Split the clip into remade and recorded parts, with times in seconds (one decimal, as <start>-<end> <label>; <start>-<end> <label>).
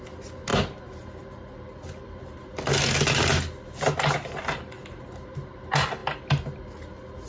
0.0-7.3 recorded